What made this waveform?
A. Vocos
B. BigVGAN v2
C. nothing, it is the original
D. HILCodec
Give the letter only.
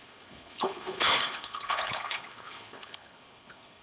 D